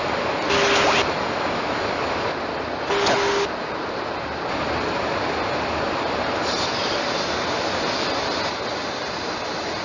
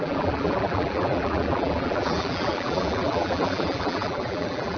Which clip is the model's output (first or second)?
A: second